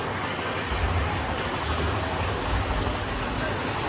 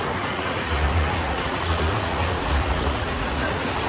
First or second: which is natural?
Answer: first